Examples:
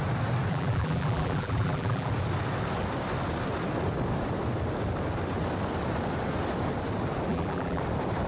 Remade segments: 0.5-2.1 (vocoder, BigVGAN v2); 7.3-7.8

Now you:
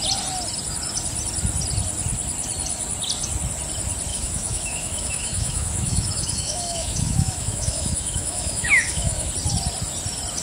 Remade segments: 4.1-9.3 (autoencoder, DAC-VAE)